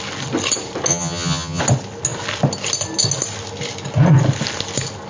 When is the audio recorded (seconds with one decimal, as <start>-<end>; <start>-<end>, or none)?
0.0-0.9; 1.6-5.1